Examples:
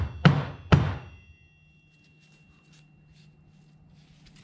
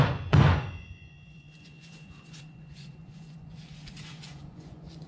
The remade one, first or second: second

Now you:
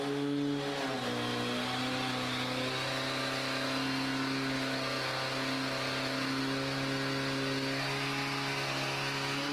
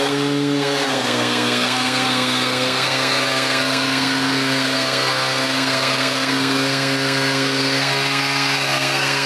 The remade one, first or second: second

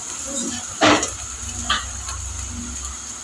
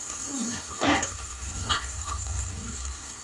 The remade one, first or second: second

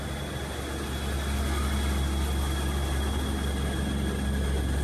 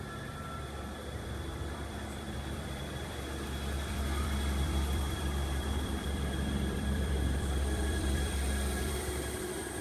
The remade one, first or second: second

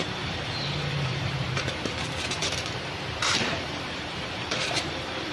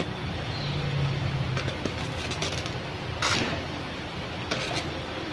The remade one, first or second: first